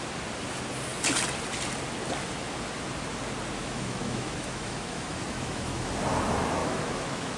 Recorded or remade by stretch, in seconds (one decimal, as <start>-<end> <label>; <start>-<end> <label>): 0.0-3.6 recorded; 3.6-5.9 remade; 5.9-6.6 recorded; 6.6-7.4 remade